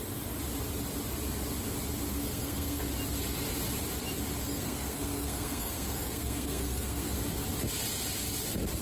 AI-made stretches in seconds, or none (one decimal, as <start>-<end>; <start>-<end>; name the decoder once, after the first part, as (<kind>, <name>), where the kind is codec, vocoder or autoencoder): 2.1-2.8 (codec, SNAC); 4.4-7.2